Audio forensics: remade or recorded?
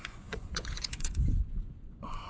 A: remade